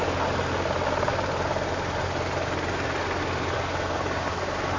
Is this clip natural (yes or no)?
yes